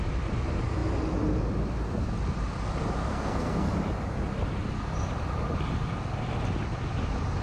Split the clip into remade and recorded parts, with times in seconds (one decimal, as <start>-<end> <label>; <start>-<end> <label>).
0.0-3.1 recorded; 3.1-3.7 remade; 3.7-7.4 recorded